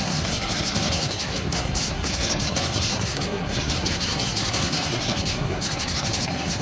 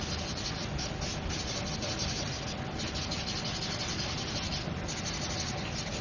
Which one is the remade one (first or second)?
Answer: first